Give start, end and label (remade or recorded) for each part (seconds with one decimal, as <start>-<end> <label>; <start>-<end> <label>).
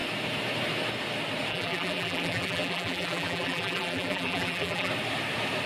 0.0-1.5 recorded; 1.5-4.9 remade; 4.9-5.7 recorded